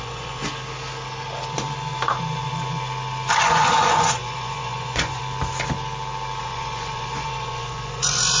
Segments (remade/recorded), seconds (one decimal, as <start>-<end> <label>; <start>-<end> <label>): 0.0-0.4 remade; 0.4-3.4 recorded; 3.4-5.2 remade; 5.2-6.4 recorded; 6.4-8.4 remade